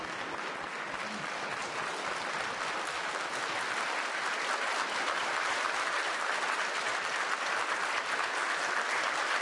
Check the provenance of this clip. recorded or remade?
recorded